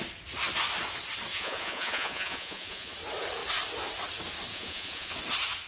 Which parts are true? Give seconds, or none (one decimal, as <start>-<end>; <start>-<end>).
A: 0.0-1.3; 2.9-4.5; 5.2-5.7